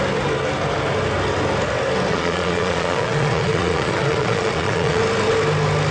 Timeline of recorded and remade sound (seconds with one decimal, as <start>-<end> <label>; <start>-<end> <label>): 0.0-2.1 recorded; 2.1-5.0 remade; 5.0-5.9 recorded

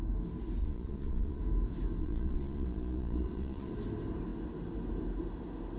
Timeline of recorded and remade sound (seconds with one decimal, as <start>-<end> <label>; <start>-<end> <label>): 0.0-0.6 recorded; 0.6-1.4 remade; 1.4-2.0 recorded; 2.0-3.7 remade; 3.7-5.8 recorded

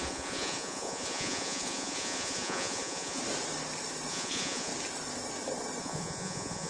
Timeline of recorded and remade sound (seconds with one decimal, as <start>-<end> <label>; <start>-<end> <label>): 0.0-3.2 remade; 3.2-4.1 recorded; 4.1-4.7 remade; 4.7-5.8 recorded; 5.8-6.7 remade

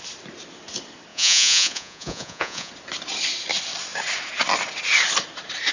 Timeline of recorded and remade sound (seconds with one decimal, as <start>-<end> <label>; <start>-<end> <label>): 0.0-1.1 recorded; 1.1-2.7 remade; 2.7-5.7 recorded

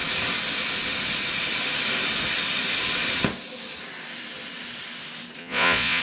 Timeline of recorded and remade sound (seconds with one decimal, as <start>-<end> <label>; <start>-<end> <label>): 0.0-5.4 recorded; 5.4-6.0 remade

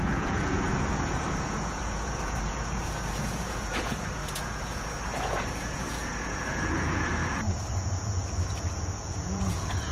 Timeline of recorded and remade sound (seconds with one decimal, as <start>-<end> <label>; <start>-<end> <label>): 0.0-9.9 remade